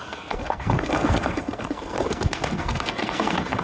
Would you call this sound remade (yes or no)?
yes